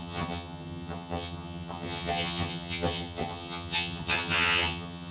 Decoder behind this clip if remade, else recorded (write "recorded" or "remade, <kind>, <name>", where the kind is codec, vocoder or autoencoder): remade, vocoder, HiFi-GAN